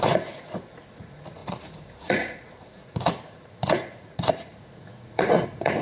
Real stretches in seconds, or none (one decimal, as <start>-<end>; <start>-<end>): none